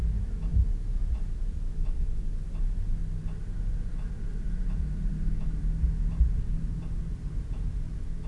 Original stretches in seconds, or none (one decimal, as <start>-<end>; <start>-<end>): 0.0-8.3